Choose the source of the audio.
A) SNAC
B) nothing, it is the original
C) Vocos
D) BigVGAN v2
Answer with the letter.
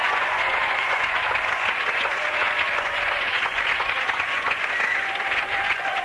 C